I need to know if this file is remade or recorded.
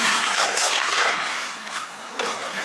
remade